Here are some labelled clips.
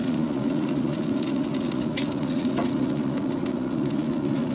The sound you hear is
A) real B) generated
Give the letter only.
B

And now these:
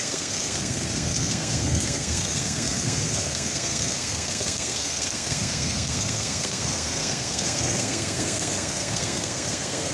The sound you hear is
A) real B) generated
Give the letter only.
B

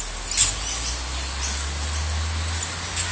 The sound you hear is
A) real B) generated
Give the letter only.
A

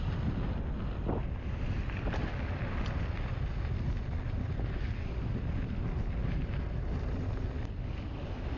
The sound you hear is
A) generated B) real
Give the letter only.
B